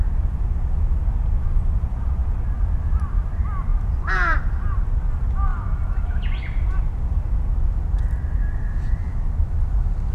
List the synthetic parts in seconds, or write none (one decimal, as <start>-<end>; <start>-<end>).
3.7-4.9